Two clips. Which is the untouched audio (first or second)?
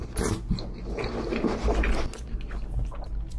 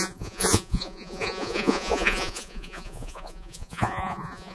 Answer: first